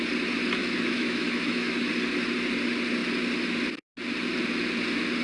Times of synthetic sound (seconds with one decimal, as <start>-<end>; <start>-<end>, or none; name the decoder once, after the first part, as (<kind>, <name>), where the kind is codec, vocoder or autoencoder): 0.6-1.9 (autoencoder, DAC-VAE)